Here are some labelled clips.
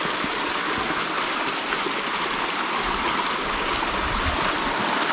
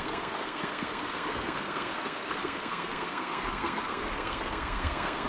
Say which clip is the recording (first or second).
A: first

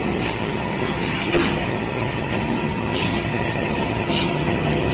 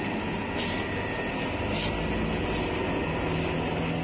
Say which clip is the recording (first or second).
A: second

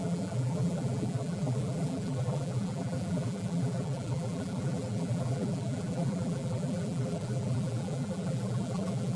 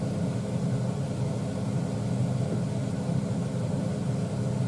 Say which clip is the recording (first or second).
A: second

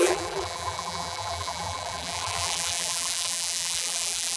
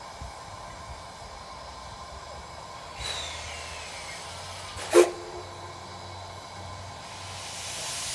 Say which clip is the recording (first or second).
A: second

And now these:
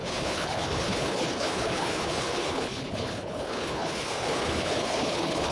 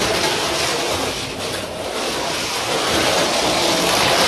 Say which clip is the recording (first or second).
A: second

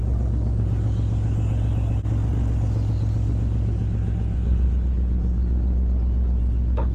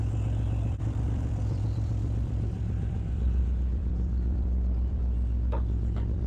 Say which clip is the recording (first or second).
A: first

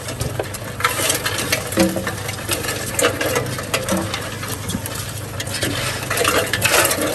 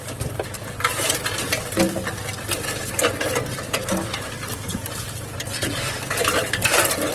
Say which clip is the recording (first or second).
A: first